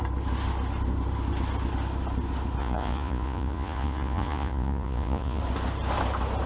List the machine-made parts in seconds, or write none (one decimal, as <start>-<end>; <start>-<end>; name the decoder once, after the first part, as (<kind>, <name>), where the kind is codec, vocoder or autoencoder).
2.6-5.4 (vocoder, Vocos)